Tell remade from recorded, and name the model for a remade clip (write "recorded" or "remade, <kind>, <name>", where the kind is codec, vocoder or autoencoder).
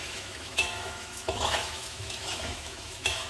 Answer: remade, autoencoder, DAC-VAE